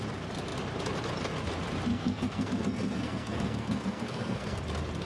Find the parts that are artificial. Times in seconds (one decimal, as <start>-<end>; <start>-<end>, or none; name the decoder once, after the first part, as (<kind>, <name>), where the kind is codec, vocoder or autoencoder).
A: 1.9-4.6 (codec, SNAC)